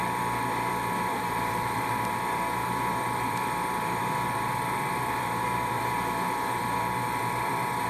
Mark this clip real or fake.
fake